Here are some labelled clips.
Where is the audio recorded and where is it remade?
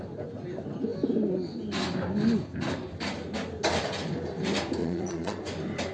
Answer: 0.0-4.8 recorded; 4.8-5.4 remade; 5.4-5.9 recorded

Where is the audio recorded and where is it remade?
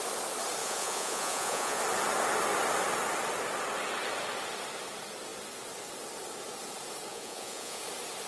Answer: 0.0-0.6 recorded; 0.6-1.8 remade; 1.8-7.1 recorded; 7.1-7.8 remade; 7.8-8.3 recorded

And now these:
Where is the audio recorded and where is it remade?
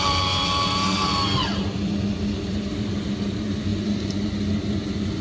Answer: 0.0-3.7 recorded; 3.7-4.4 remade; 4.4-5.2 recorded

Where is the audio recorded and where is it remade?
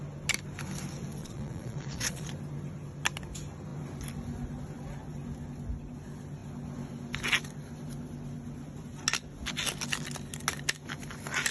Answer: 0.0-1.2 recorded; 1.2-2.3 remade; 2.3-11.5 recorded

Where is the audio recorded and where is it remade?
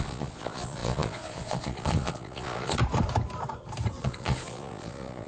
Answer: 0.0-2.8 remade; 2.8-4.0 recorded; 4.0-5.3 remade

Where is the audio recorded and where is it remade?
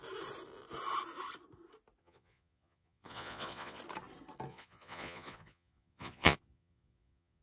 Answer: 0.0-2.0 recorded; 2.0-3.8 remade; 3.8-4.5 recorded; 4.5-7.4 remade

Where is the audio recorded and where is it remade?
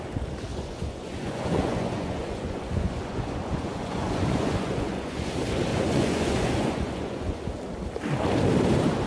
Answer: 0.0-0.5 recorded; 0.5-5.3 remade; 5.3-5.7 recorded; 5.7-7.5 remade; 7.5-9.1 recorded